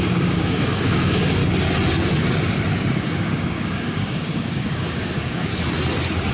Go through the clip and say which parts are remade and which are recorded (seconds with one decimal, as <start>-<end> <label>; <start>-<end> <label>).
0.0-1.4 remade; 1.4-3.0 recorded; 3.0-5.5 remade; 5.5-6.3 recorded